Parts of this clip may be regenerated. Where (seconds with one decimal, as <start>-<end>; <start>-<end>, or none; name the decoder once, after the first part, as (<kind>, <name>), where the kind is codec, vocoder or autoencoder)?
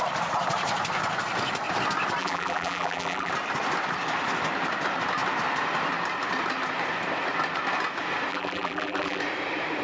2.2-3.3 (vocoder, BigVGAN v2); 8.3-9.2